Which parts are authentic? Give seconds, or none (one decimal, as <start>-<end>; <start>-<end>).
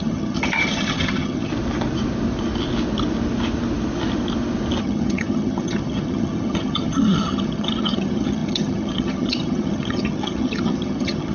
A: 1.5-4.8